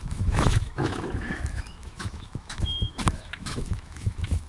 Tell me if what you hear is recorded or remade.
remade